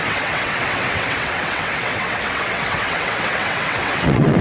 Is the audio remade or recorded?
remade